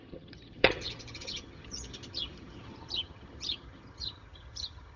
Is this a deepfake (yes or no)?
yes